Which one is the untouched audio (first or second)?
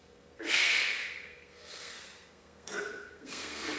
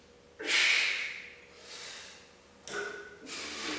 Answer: second